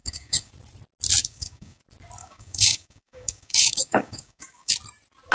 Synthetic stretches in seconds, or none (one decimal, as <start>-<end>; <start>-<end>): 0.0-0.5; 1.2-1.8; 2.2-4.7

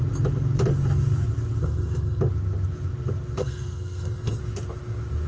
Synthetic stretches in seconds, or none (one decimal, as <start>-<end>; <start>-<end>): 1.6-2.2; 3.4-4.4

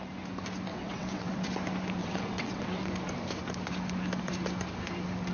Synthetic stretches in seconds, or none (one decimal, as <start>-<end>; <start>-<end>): 0.7-1.5; 2.0-2.9

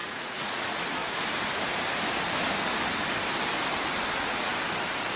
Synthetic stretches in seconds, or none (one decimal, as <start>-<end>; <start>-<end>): 0.0-1.0; 4.1-4.5

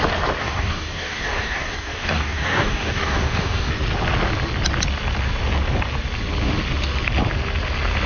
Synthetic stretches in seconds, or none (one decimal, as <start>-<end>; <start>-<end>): 0.4-3.7

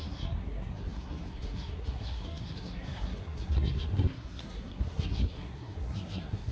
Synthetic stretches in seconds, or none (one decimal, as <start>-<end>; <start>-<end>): 0.0-6.5